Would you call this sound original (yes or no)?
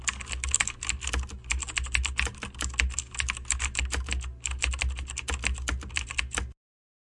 yes